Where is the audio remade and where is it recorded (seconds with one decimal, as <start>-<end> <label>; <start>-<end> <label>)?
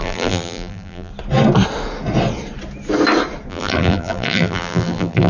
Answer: 0.0-1.1 remade; 1.1-3.5 recorded; 3.5-5.3 remade